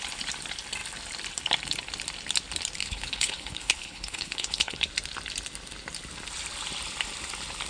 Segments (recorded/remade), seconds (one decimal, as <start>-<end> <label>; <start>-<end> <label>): 0.0-2.8 recorded; 2.8-4.8 remade; 4.8-7.7 recorded